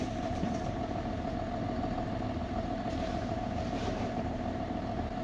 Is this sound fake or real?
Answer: fake